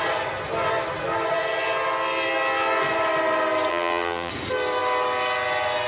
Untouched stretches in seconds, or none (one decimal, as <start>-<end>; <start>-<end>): 0.0-3.7; 4.3-5.9